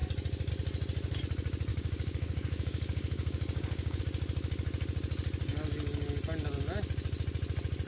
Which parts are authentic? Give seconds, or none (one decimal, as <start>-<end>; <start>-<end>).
0.0-1.7; 4.0-7.9